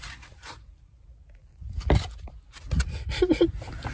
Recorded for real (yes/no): yes